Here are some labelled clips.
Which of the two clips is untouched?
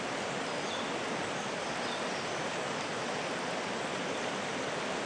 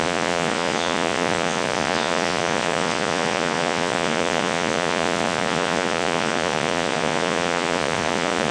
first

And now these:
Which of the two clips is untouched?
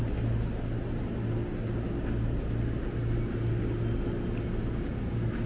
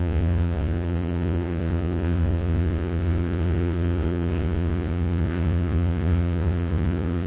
first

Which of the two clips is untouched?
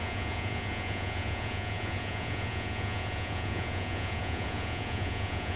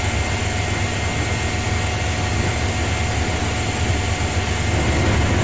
second